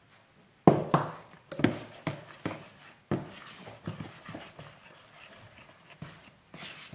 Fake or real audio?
real